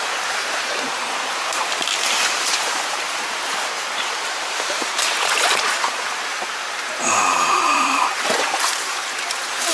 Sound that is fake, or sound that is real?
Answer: fake